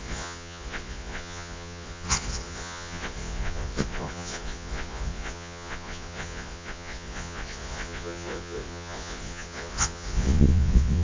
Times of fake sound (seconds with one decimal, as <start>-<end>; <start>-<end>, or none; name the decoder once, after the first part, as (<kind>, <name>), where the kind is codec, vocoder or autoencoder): 0.0-11.0 (vocoder, Vocos)